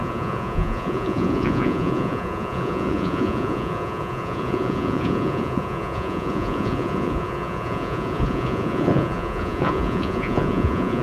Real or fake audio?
fake